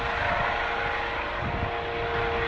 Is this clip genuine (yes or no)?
yes